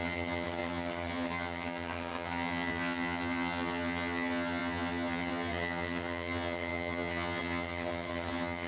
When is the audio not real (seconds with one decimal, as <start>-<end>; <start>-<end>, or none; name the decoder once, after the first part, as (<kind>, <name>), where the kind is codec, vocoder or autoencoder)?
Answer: 0.0-8.7 (vocoder, HiFi-GAN)